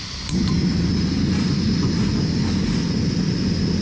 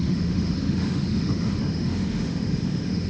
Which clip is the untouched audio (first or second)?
first